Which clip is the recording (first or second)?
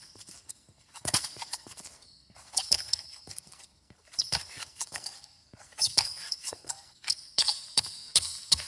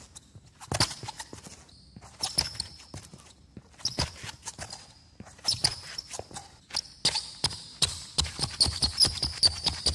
second